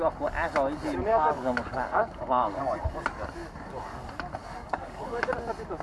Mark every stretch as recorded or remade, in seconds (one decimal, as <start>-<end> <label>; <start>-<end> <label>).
0.0-1.1 recorded; 1.1-2.6 remade; 2.6-4.4 recorded; 4.4-5.3 remade; 5.3-5.8 recorded